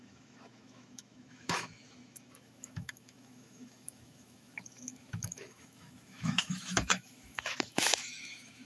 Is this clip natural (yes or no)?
no